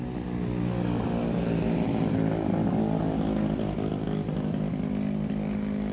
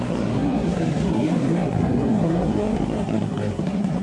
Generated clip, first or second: second